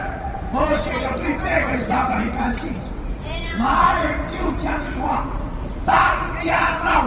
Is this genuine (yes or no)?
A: no